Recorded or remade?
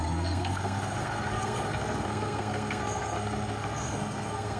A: remade